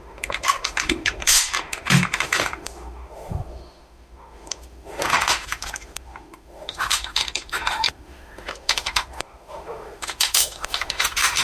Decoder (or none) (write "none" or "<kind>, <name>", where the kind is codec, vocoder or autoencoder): autoencoder, DAC-VAE